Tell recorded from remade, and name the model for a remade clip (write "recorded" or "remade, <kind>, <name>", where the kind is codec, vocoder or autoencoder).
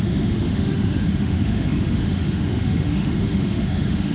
remade, autoencoder, DAC-VAE